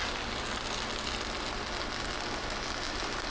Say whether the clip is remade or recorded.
recorded